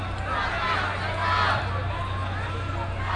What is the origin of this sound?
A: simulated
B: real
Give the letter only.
B